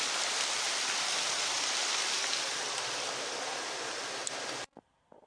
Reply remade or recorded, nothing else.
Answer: recorded